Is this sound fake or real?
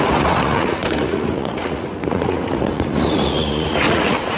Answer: fake